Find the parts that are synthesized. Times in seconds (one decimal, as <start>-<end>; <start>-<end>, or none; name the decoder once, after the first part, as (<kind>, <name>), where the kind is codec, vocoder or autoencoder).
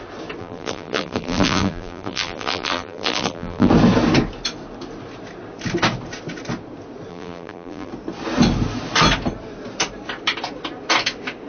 0.4-3.7 (vocoder, BigVGAN v2); 7.1-7.9